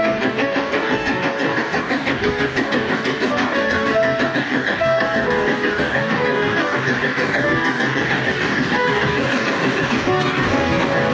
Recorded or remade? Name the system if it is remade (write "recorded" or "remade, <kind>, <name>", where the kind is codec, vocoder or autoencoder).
remade, codec, DAC